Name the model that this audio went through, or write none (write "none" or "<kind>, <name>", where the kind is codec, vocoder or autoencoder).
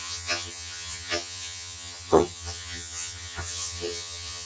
vocoder, HiFi-GAN